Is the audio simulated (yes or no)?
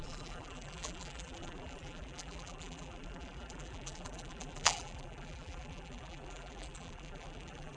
yes